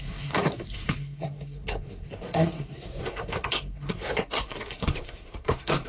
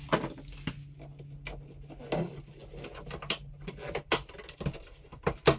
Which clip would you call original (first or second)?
second